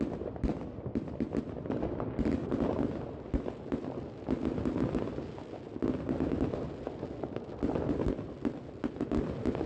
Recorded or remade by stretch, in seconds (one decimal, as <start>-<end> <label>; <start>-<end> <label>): 0.0-9.7 recorded